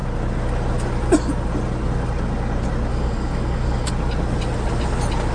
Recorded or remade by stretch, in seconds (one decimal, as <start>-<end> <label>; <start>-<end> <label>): 0.0-2.9 recorded; 2.9-3.9 remade; 3.9-5.3 recorded